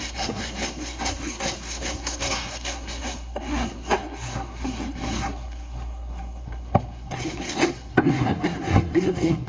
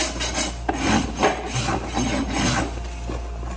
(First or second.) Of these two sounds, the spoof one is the first